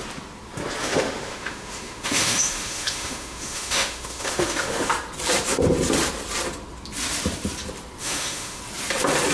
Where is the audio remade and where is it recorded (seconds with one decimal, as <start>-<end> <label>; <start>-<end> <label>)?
0.0-0.8 recorded; 0.8-4.9 remade; 4.9-8.0 recorded; 8.0-8.6 remade; 8.6-9.3 recorded